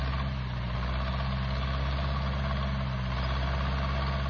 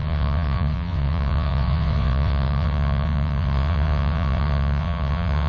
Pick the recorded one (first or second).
first